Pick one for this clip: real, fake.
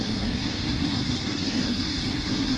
fake